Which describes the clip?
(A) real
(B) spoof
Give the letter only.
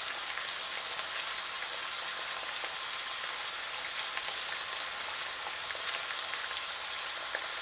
A